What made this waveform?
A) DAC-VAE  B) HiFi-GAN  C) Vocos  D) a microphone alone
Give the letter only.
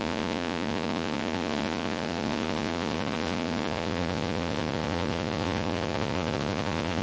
C